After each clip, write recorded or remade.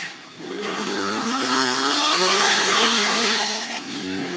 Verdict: remade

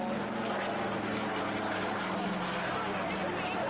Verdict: recorded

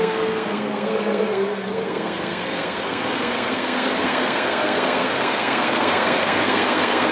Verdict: remade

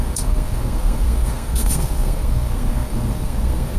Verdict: remade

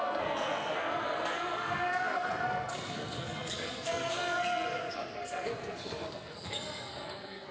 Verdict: remade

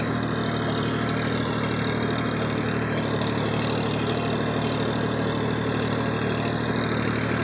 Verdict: recorded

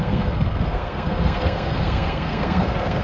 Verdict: remade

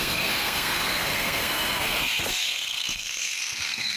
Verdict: remade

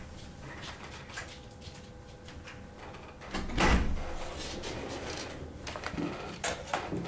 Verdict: recorded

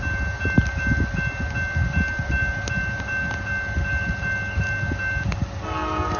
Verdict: recorded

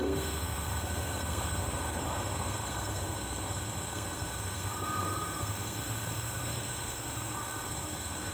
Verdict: remade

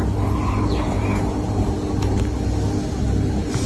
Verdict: recorded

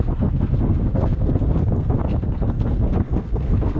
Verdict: remade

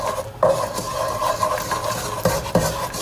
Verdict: recorded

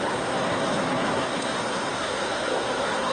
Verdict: remade